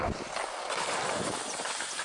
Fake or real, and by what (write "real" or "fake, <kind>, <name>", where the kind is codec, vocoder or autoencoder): real